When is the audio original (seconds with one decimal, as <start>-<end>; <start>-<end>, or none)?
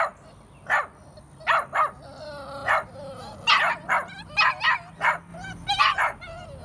0.0-6.6